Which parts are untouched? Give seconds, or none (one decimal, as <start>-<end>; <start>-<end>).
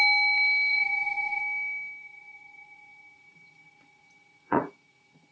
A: 0.0-0.7; 1.4-2.0